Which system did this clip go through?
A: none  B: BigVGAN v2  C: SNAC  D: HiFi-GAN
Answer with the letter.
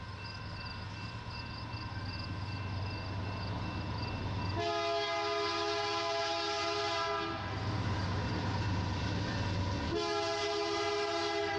A